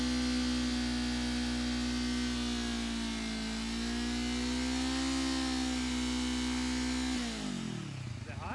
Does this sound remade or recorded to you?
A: recorded